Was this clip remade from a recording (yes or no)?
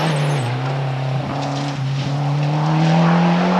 no